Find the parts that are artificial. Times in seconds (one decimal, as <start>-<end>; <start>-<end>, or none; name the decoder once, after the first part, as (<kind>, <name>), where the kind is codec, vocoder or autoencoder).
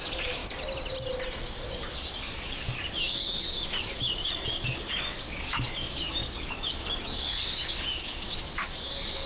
0.0-0.4 (codec, DAC); 1.4-9.3